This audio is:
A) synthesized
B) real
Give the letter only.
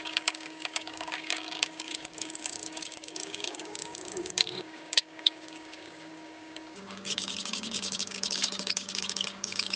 A